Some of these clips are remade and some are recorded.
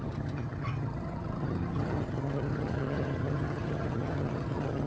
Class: remade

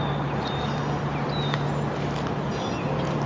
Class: recorded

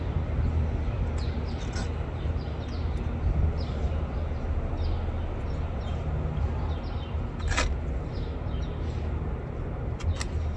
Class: recorded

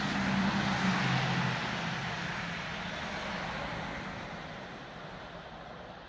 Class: recorded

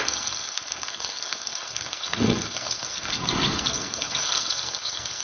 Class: remade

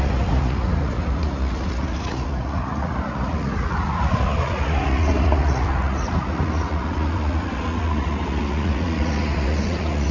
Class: remade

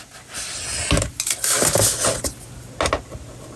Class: recorded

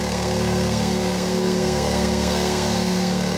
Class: remade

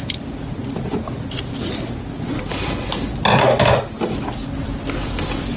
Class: recorded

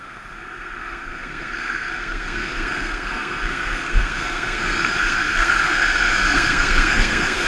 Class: remade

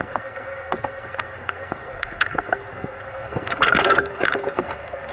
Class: remade